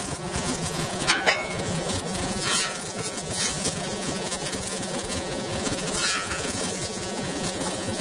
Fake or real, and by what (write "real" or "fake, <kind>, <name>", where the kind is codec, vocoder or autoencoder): fake, vocoder, Vocos